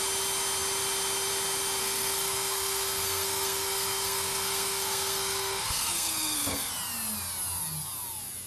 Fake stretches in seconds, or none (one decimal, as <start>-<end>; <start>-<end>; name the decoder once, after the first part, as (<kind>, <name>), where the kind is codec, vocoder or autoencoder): 1.8-6.7 (codec, SNAC)